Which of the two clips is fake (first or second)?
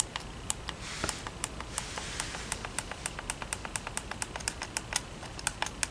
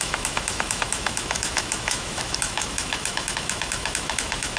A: second